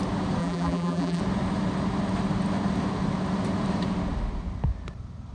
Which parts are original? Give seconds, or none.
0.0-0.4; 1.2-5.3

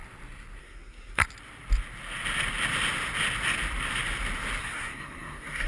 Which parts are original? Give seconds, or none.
0.0-0.6; 1.2-4.6